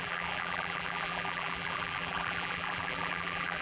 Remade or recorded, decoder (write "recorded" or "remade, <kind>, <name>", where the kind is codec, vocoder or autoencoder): remade, vocoder, BigVGAN v2